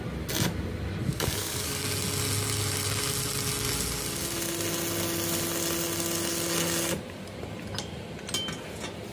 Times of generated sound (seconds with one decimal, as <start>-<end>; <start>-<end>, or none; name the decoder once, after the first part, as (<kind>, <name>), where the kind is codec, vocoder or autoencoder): 1.1-1.8 (codec, DAC)